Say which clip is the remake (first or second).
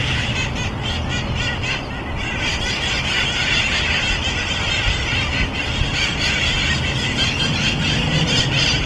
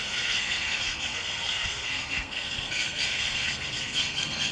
second